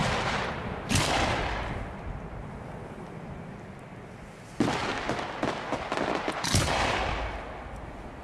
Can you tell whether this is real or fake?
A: real